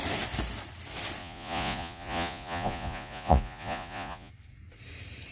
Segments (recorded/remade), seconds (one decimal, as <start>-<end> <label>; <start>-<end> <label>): 0.0-1.2 recorded; 1.2-4.3 remade; 4.3-5.3 recorded